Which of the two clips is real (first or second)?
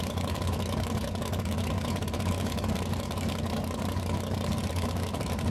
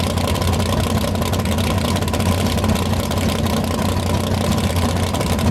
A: second